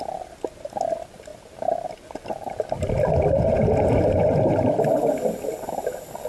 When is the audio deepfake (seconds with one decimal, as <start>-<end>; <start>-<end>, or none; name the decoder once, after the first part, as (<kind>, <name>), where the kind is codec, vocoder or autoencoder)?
none